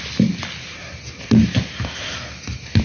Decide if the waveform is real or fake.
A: real